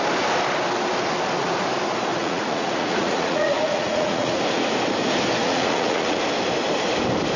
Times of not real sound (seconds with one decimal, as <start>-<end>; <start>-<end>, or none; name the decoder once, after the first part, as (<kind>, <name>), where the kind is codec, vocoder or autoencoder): 2.1-4.4 (vocoder, Vocos); 5.4-6.2